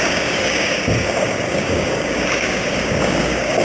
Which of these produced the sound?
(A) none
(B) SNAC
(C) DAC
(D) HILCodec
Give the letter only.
C